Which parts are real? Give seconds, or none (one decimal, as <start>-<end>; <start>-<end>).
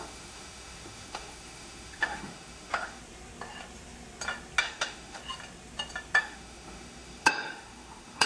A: 3.0-4.6; 5.2-6.2